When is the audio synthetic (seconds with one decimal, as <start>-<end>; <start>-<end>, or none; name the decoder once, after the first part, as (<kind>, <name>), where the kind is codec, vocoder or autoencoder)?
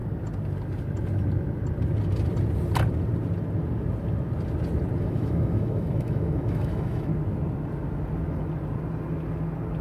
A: 5.0-7.1 (autoencoder, DAC-VAE)